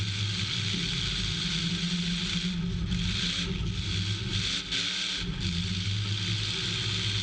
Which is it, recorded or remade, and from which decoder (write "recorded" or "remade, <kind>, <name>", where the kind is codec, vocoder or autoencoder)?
recorded